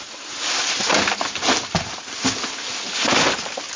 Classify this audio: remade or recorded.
recorded